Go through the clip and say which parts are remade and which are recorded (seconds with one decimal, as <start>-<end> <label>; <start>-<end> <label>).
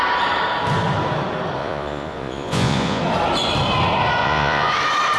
0.0-1.6 recorded; 1.6-3.0 remade; 3.0-4.2 recorded; 4.2-4.7 remade; 4.7-5.2 recorded